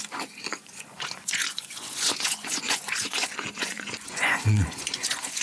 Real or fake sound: fake